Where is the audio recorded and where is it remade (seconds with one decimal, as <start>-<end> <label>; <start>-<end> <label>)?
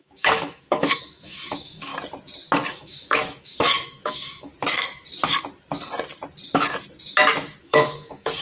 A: 0.0-1.9 remade; 1.9-2.7 recorded; 2.7-4.5 remade; 4.5-7.6 recorded; 7.6-8.4 remade